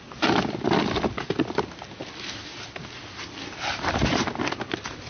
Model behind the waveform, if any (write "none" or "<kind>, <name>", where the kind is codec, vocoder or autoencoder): none